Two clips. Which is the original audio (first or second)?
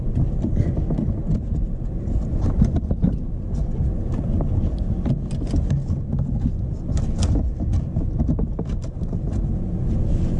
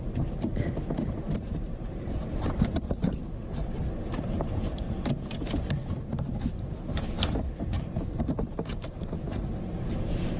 first